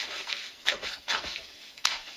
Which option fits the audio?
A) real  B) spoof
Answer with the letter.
B